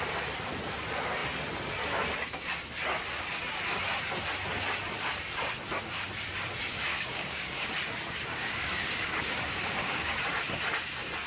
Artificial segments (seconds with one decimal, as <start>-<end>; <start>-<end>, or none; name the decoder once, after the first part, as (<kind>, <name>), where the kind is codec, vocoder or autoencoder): 6.9-7.7 (codec, DAC); 8.3-10.2